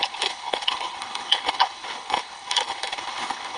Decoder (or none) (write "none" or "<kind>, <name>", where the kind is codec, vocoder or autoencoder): codec, HILCodec